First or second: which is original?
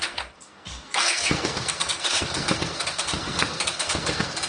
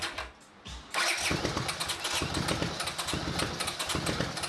second